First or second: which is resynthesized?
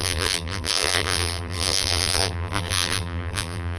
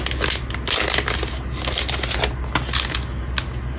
first